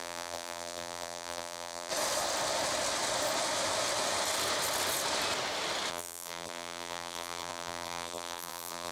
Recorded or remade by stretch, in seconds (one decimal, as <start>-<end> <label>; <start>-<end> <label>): 0.0-1.9 remade; 1.9-5.9 recorded; 5.9-8.9 remade